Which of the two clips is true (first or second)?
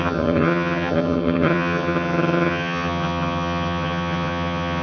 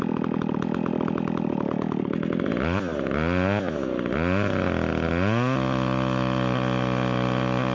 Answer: second